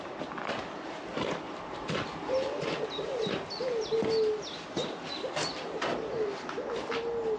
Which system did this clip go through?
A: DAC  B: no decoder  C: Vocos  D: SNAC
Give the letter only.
B